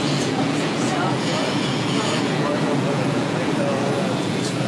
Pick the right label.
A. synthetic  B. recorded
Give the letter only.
A